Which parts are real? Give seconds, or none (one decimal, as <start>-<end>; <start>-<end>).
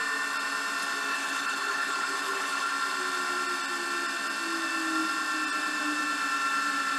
0.0-1.1; 2.7-7.0